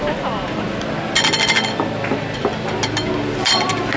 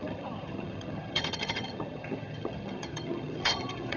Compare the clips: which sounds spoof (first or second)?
second